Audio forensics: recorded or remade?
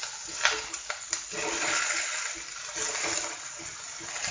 recorded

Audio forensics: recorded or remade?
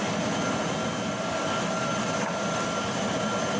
remade